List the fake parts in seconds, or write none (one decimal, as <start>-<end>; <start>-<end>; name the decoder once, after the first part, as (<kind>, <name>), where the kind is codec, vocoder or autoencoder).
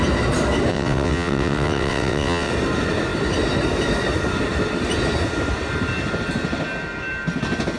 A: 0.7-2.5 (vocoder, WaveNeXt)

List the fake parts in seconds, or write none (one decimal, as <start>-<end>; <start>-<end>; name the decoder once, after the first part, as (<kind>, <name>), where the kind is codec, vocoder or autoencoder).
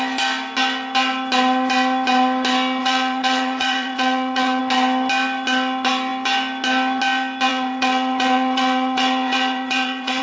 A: 2.8-4.6 (vocoder, WaveNeXt); 7.5-10.2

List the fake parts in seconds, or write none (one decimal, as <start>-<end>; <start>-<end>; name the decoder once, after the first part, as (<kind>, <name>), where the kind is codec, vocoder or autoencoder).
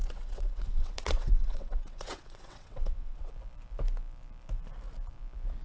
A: 0.0-3.3 (vocoder, WaveNeXt)